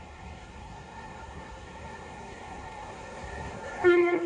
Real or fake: fake